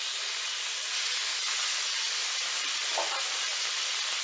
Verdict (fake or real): real